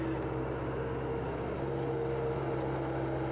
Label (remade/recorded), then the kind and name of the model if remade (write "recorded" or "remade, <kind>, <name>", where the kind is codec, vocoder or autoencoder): recorded